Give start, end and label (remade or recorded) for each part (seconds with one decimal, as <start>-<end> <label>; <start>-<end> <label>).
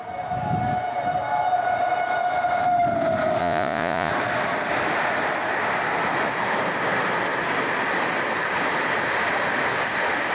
0.0-3.4 recorded; 3.4-4.1 remade; 4.1-10.3 recorded